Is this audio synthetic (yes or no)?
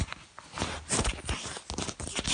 no